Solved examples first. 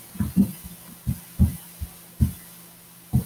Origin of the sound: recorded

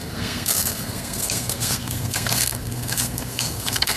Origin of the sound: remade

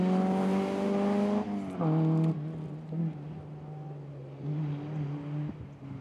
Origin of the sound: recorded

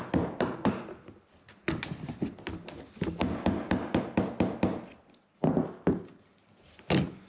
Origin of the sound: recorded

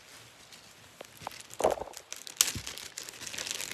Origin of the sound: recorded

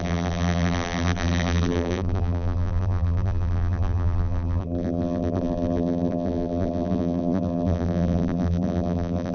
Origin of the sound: remade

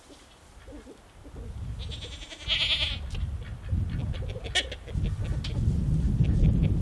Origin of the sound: recorded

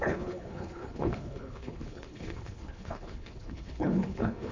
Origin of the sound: remade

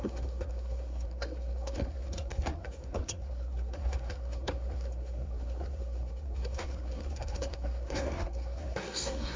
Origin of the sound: remade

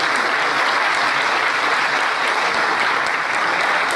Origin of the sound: recorded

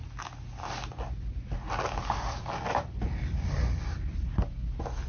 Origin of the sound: recorded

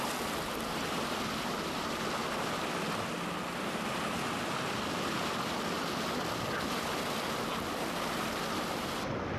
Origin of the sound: recorded